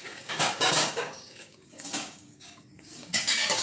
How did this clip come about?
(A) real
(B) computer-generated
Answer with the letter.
B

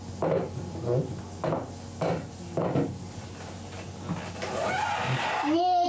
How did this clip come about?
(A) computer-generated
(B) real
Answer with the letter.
B